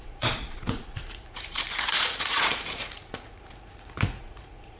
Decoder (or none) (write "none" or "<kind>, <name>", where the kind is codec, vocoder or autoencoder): vocoder, Vocos